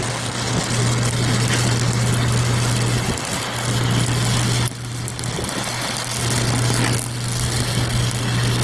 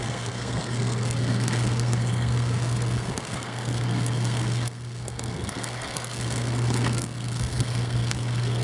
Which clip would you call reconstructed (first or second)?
second